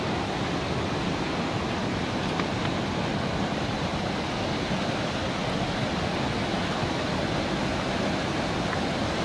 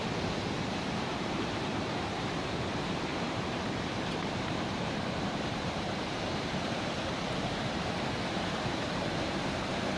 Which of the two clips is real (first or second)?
first